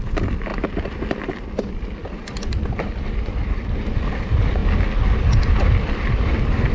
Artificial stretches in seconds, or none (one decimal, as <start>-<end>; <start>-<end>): 0.0-0.5; 1.1-4.6; 5.5-6.7